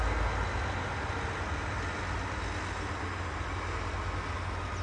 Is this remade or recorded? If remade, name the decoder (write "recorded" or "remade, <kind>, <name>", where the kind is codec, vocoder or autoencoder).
recorded